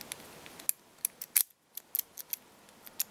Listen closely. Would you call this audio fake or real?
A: real